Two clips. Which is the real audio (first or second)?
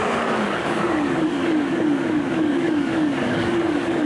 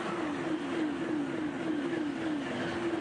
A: second